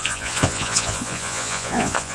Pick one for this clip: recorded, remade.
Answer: remade